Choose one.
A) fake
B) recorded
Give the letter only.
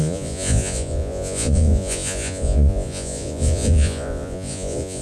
A